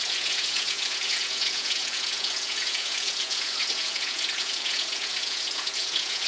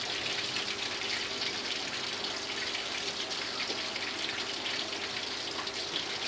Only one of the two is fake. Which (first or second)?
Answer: first